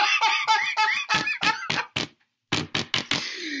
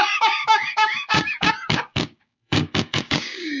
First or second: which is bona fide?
first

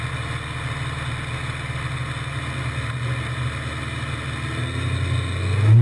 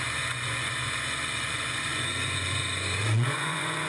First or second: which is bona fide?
first